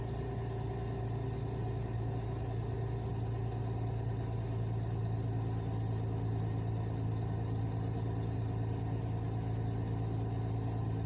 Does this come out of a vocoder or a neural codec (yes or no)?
no